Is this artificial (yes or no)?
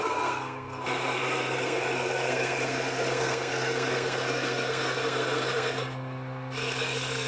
yes